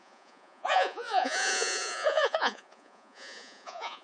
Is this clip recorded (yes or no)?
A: no